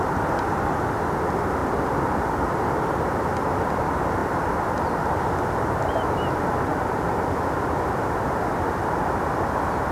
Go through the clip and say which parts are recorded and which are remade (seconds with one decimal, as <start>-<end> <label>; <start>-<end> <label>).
0.0-6.7 recorded; 6.7-8.0 remade; 8.0-9.9 recorded